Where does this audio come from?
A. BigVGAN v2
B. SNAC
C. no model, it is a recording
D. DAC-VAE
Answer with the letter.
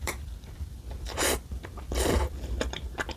A